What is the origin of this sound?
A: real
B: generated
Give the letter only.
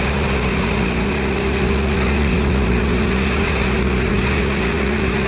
B